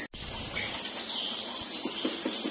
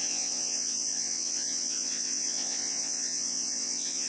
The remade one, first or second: second